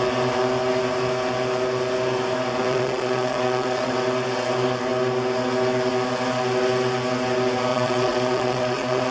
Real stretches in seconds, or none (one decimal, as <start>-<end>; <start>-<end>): 0.0-2.6; 3.9-7.7

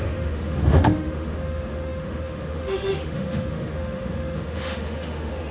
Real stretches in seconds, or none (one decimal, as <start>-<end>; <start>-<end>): none

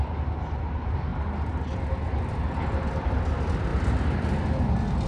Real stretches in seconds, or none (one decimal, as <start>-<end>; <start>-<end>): 0.0-5.1

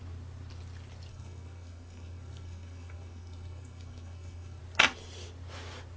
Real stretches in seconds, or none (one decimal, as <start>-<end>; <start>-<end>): 0.0-1.1; 4.6-6.0

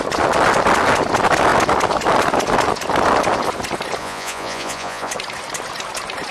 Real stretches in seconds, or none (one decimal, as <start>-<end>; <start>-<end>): 0.0-4.0; 5.1-6.3

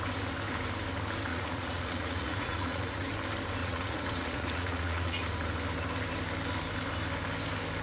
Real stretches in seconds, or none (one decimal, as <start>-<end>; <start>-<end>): 0.0-1.3; 3.1-3.6; 5.2-7.8

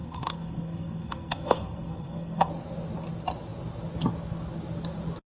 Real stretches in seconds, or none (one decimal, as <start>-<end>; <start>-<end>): 2.5-5.3